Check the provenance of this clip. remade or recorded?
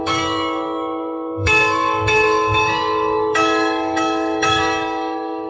remade